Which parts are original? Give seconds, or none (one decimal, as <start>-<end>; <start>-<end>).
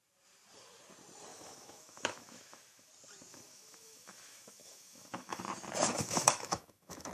0.0-1.3; 2.9-3.3; 5.4-5.9